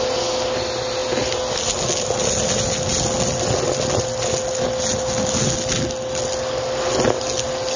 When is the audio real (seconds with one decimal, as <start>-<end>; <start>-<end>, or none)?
0.0-7.8